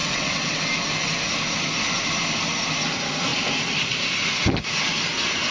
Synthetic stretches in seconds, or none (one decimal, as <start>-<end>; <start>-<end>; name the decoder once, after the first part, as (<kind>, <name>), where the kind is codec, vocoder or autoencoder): 0.0-0.6 (vocoder, WaveNeXt)